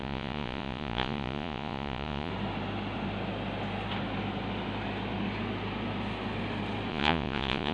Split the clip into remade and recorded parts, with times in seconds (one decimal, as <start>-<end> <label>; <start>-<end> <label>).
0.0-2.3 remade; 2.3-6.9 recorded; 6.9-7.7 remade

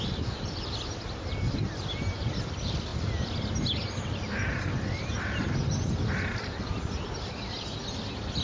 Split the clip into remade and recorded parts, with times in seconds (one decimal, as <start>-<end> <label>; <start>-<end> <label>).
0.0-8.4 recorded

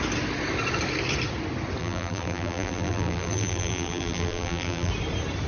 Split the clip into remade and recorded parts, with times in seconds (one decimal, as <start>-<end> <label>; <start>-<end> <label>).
0.0-1.8 recorded; 1.8-4.9 remade; 4.9-5.5 recorded

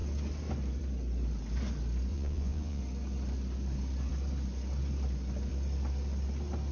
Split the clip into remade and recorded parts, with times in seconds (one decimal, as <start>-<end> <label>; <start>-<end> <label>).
0.0-2.1 recorded; 2.1-2.8 remade; 2.8-6.7 recorded

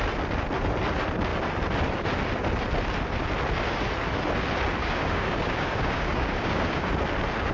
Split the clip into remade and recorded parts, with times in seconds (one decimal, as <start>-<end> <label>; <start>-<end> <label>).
0.0-4.8 recorded; 4.8-6.9 remade; 6.9-7.5 recorded

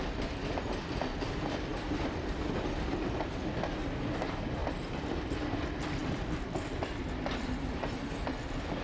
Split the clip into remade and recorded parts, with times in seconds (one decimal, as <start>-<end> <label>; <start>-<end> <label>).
0.0-1.7 recorded; 1.7-3.6 remade; 3.6-4.6 recorded; 4.6-5.4 remade; 5.4-6.0 recorded; 6.0-7.8 remade; 7.8-8.8 recorded